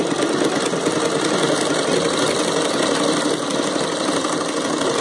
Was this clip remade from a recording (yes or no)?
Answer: yes